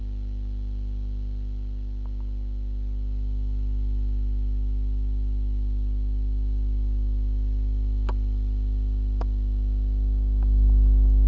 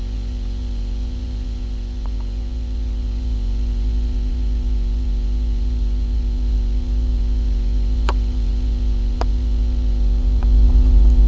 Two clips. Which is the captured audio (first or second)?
first